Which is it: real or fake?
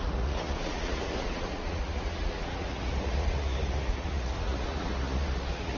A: fake